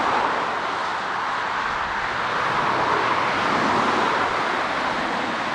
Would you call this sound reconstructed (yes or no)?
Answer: no